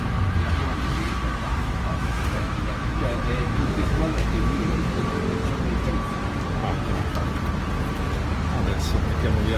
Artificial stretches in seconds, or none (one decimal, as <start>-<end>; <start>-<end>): 1.6-4.7